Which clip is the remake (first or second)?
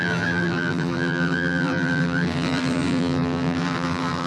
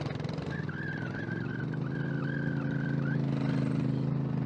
first